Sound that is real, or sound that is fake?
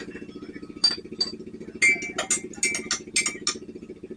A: real